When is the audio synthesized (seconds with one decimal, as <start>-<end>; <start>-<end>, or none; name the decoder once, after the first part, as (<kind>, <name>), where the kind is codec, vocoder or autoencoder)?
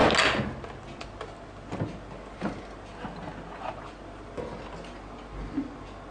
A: none